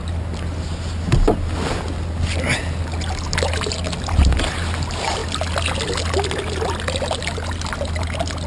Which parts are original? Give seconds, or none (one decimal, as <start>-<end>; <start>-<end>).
0.0-8.5